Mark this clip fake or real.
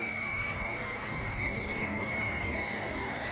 fake